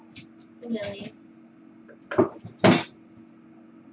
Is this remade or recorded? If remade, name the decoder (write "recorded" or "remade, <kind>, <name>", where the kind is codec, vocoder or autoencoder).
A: recorded